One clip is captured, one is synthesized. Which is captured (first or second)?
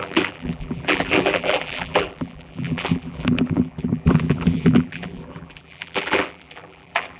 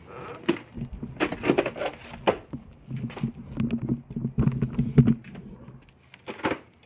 second